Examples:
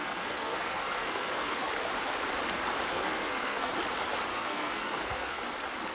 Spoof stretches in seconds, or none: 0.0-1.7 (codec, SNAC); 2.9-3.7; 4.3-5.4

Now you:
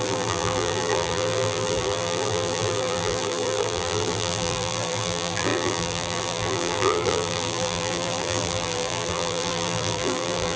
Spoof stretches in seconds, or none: 0.0-10.6 (vocoder, BigVGAN v2)